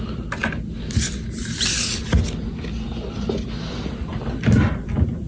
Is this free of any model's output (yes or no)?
yes